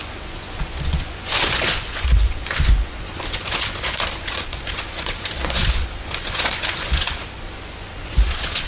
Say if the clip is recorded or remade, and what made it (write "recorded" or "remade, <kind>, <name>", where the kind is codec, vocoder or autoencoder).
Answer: remade, vocoder, Vocos